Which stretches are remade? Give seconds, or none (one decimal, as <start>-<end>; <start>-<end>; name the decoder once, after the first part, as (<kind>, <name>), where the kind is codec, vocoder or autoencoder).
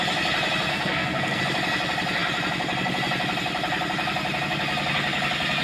0.7-1.4 (codec, SNAC)